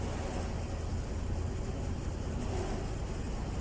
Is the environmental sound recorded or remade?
recorded